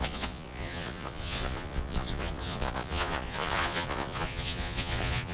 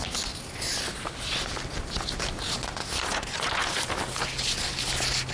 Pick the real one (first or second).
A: second